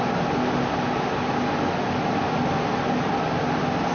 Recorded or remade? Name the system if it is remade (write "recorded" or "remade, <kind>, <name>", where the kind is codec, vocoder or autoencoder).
recorded